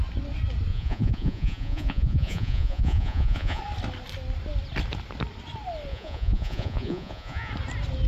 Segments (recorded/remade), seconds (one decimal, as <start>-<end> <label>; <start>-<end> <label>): 0.0-0.7 recorded; 0.7-3.6 remade; 3.6-5.9 recorded; 5.9-7.5 remade; 7.5-8.1 recorded